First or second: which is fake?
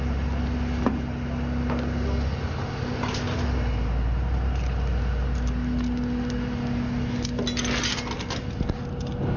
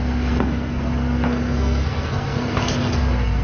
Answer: second